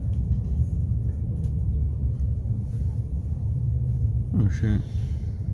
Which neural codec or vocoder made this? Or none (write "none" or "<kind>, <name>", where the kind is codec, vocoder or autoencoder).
vocoder, BigVGAN v2